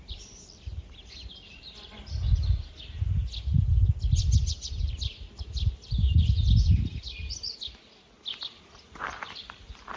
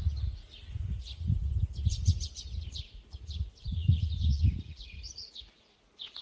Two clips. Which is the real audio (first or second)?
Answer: first